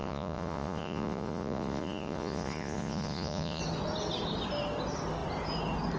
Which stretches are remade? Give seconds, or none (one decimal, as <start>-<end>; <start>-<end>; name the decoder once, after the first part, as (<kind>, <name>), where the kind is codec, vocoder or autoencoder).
0.0-3.6 (vocoder, Vocos)

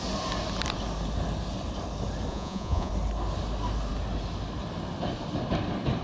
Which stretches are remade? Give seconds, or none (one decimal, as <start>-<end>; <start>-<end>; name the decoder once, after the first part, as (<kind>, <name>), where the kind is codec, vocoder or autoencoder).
2.3-2.9 (vocoder, Vocos)

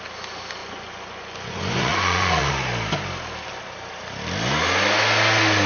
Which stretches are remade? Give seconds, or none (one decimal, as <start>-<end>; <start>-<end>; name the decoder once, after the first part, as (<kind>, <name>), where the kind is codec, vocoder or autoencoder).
0.6-2.5 (vocoder, Vocos)

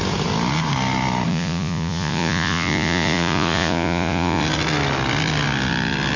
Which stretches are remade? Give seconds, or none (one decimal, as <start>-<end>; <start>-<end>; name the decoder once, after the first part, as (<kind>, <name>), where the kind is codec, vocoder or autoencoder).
1.3-4.4 (vocoder, Vocos)

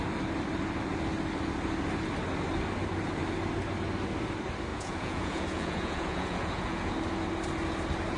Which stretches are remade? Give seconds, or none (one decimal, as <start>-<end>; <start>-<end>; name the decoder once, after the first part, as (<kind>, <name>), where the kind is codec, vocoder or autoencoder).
4.7-6.9 (vocoder, Vocos)

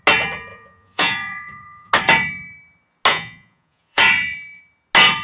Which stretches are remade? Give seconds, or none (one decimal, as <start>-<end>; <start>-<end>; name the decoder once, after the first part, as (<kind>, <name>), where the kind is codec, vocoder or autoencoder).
0.5-1.9 (vocoder, Vocos); 3.1-4.0